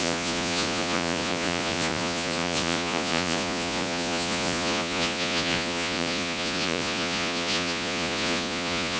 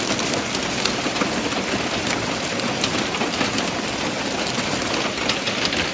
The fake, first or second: first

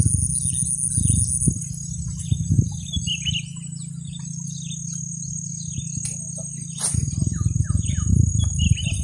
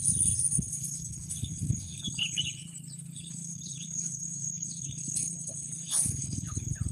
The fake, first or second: second